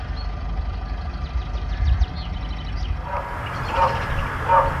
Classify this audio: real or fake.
real